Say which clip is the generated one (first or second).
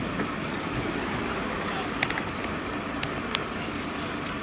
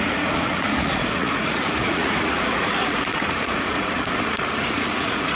second